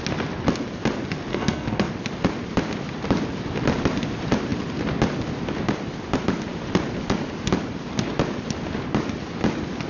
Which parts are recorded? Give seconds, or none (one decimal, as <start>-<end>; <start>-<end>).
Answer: 0.0-1.3; 1.9-9.9